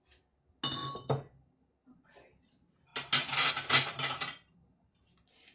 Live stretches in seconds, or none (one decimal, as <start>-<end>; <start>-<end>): 0.0-5.5